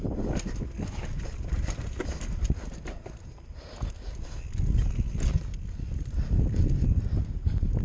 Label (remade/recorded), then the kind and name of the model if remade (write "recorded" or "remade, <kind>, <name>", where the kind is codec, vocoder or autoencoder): recorded